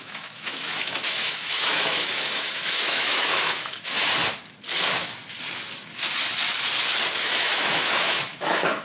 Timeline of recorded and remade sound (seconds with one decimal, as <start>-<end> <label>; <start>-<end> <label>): 0.0-4.1 remade; 4.1-7.2 recorded; 7.2-8.8 remade